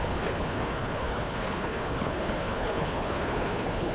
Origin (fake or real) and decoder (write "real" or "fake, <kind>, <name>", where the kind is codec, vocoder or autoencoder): fake, codec, HILCodec